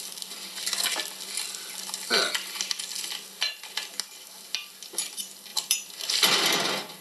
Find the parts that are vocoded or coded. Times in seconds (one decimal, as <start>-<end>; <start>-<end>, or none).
5.5-6.3